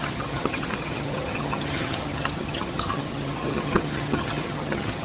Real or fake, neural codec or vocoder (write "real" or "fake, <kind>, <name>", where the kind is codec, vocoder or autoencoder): fake, vocoder, HiFi-GAN